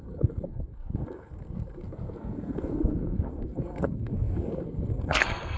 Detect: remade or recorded remade